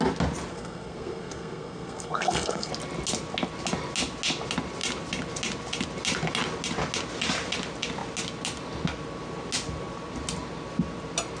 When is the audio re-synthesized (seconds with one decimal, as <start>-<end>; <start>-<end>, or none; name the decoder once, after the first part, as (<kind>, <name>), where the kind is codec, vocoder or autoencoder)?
0.5-2.7 (codec, SNAC)